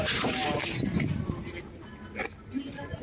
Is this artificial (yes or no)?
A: no